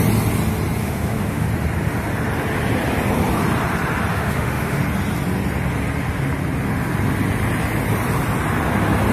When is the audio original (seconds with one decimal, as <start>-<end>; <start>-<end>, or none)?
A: 0.0-0.8; 1.5-4.1; 4.8-9.1